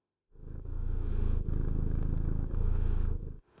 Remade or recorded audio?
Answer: remade